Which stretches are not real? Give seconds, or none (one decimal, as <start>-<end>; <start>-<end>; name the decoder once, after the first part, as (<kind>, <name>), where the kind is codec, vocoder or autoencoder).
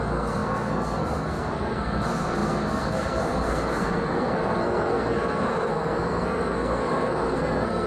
0.0-7.9 (codec, SNAC)